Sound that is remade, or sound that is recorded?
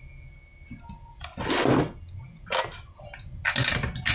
recorded